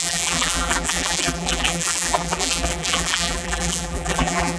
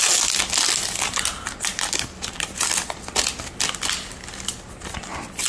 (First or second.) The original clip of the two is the second